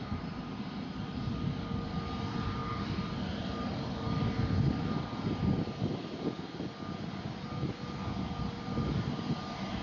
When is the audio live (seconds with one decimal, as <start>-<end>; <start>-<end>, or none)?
0.0-9.8